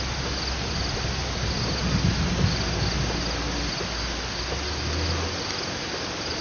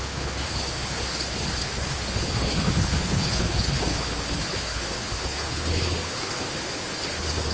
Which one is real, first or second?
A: first